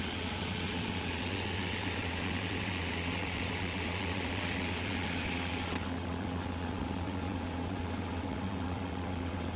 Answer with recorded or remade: remade